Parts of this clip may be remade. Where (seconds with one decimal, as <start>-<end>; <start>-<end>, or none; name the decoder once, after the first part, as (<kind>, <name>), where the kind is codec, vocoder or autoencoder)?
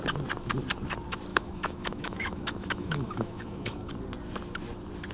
1.3-3.9 (autoencoder, DAC-VAE)